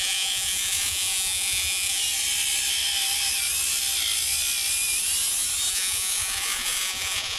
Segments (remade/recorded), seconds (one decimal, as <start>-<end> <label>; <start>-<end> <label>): 0.0-2.0 remade; 2.0-5.7 recorded; 5.7-7.4 remade